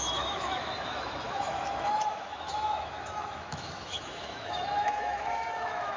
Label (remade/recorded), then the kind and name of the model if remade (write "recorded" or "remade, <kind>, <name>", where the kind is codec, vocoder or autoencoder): remade, autoencoder, DAC-VAE